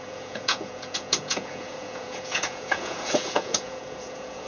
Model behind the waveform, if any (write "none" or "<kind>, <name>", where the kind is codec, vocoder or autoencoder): vocoder, Vocos